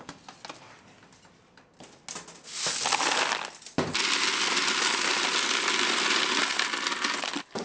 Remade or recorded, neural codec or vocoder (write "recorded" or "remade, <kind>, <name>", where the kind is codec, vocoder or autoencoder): recorded